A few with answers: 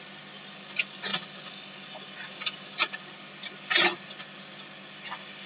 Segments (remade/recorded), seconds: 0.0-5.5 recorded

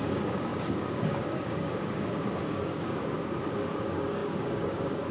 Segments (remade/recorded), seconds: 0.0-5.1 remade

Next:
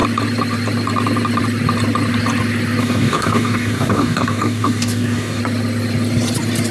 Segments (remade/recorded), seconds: 0.0-2.8 recorded; 2.8-5.4 remade; 5.4-6.7 recorded